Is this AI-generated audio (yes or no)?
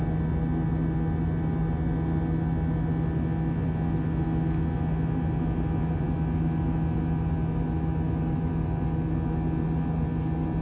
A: no